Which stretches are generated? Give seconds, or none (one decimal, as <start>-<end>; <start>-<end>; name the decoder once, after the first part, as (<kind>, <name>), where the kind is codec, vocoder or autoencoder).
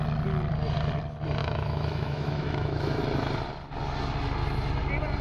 1.4-3.0 (autoencoder, DAC-VAE)